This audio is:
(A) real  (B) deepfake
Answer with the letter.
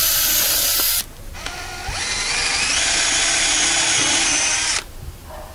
A